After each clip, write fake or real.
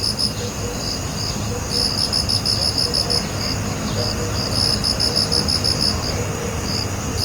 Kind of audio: real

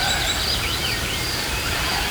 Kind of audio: fake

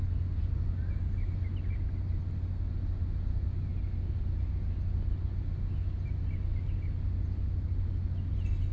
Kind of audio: real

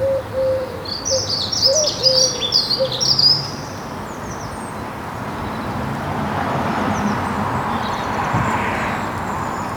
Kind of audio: fake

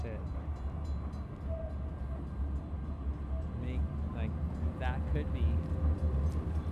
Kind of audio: real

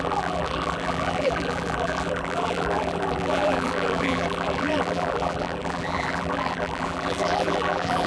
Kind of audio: fake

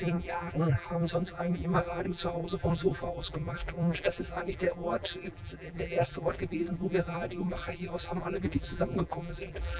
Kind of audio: fake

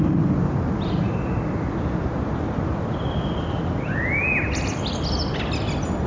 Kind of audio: real